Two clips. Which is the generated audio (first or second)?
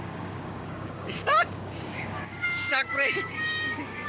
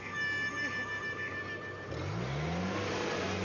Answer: first